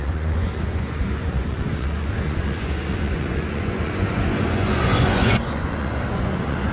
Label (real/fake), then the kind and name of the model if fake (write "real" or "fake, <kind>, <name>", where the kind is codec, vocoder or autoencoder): fake, vocoder, Vocos